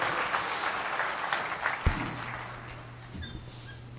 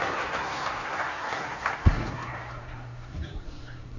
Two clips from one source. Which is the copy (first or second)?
second